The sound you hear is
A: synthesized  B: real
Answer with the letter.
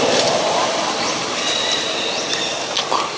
B